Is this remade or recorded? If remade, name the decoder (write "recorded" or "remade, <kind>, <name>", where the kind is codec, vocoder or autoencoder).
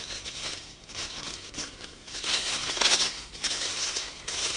remade, codec, SNAC